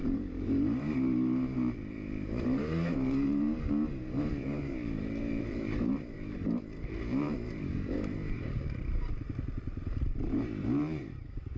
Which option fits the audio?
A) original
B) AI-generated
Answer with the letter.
B